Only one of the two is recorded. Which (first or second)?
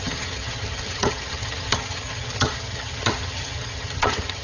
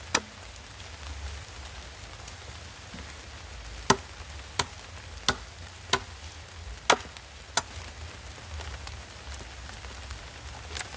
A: second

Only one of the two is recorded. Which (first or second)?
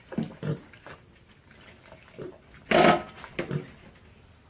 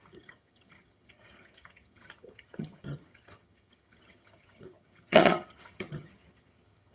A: first